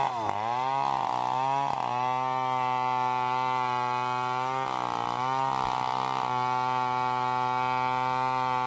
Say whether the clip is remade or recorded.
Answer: recorded